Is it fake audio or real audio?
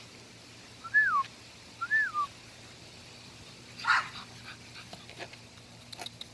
real